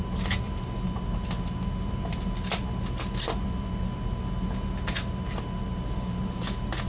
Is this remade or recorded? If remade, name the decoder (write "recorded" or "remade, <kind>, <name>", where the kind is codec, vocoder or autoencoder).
recorded